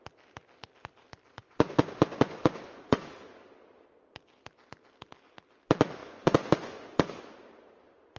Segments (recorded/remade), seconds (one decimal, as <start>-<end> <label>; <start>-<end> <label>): 0.0-1.4 recorded; 1.4-3.1 remade; 3.1-6.0 recorded; 6.0-7.2 remade; 7.2-8.2 recorded